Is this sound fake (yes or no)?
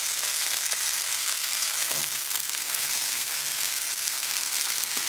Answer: yes